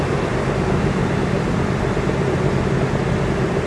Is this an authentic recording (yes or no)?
yes